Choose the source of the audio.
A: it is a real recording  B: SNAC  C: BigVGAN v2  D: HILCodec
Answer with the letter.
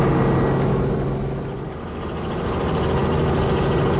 A